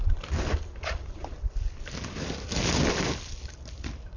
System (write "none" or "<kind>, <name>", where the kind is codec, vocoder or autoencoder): none